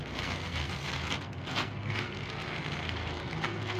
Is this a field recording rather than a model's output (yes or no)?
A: no